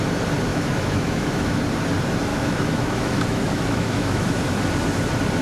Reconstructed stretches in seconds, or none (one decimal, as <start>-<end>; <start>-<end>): 0.5-1.6; 2.3-4.4